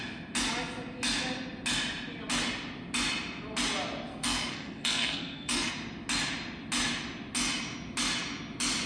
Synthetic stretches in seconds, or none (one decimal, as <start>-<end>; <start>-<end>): 4.1-5.7